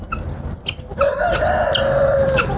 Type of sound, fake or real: real